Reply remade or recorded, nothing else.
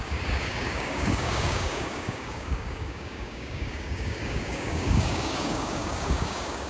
remade